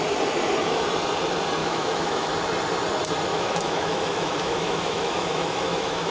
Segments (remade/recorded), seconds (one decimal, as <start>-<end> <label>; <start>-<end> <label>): 0.0-1.6 recorded; 1.6-2.3 remade; 2.3-3.3 recorded; 3.3-6.1 remade